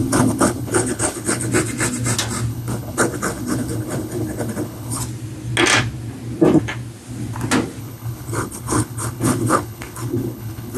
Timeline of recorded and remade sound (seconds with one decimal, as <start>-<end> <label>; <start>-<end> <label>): 0.0-1.5 remade; 1.5-2.5 recorded; 2.5-5.0 remade; 5.0-7.8 recorded; 7.8-10.8 remade

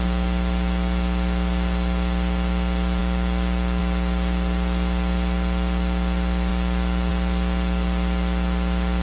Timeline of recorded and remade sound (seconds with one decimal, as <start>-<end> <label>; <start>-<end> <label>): 0.0-9.0 recorded

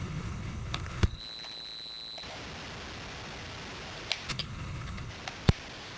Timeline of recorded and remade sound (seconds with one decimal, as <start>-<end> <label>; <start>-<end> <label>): 0.0-1.2 remade; 1.2-4.3 recorded; 4.3-5.1 remade; 5.1-6.0 recorded

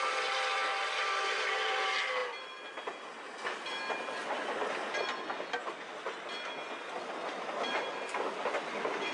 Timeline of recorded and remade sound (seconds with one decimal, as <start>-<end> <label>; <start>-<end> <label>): 0.0-9.1 recorded

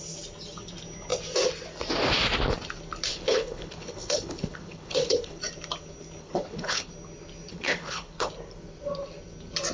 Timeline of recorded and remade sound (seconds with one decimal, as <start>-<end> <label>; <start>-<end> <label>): 0.0-3.1 recorded; 3.1-5.4 remade; 5.4-6.2 recorded; 6.2-6.9 remade; 6.9-7.5 recorded; 7.5-8.3 remade; 8.3-9.7 recorded

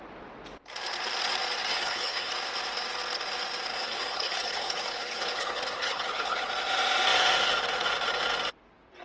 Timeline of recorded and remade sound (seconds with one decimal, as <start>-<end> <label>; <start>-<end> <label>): 0.0-1.7 recorded; 1.7-2.3 remade; 2.3-3.7 recorded; 3.7-6.5 remade; 6.5-9.0 recorded

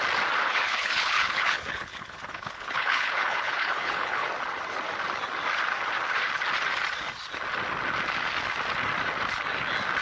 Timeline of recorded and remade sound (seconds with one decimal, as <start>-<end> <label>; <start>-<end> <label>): 0.0-0.4 recorded; 0.4-4.3 remade; 4.3-10.0 recorded

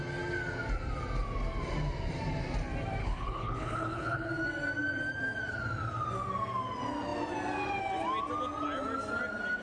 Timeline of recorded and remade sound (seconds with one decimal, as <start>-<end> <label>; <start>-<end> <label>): 0.0-3.0 recorded; 3.0-4.3 remade; 4.3-9.6 recorded